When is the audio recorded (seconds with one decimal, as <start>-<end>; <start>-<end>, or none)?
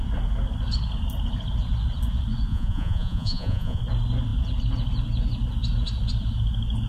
0.0-2.5; 3.8-6.9